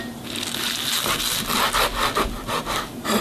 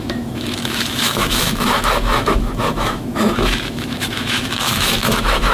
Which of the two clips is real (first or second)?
first